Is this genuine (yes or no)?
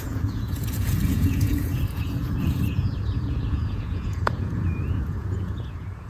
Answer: no